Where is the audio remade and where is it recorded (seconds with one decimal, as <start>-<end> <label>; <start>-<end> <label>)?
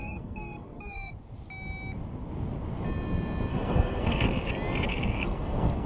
0.0-1.1 remade; 1.1-3.5 recorded; 3.5-4.5 remade; 4.5-4.9 recorded; 4.9-5.9 remade